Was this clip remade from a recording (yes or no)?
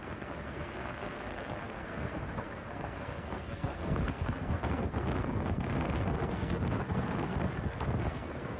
yes